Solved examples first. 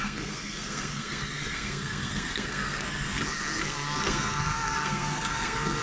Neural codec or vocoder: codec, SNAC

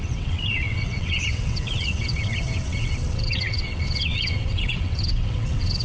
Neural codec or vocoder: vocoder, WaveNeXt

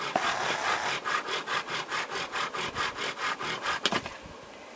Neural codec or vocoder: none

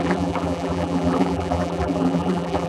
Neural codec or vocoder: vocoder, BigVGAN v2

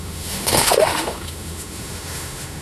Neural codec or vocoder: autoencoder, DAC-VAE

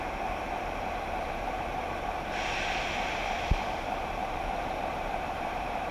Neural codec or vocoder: vocoder, BigVGAN v2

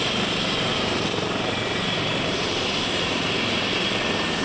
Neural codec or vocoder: vocoder, BigVGAN v2